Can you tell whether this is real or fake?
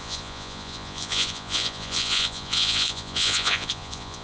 fake